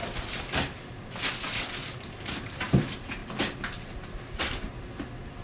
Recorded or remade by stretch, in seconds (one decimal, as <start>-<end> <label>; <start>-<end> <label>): 0.0-5.4 recorded